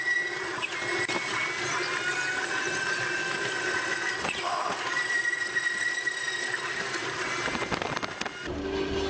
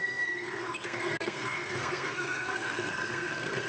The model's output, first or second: second